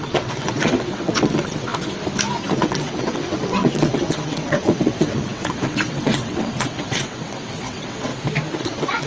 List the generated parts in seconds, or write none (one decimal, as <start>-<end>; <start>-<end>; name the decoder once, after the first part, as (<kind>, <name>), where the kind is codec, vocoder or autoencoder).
0.0-1.7 (vocoder, WaveNeXt); 2.5-8.1; 8.6-9.1